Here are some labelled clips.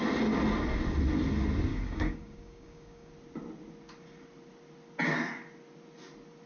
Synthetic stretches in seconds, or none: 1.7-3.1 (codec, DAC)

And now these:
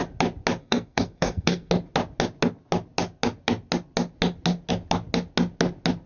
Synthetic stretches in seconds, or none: 0.6-1.7 (codec, SNAC)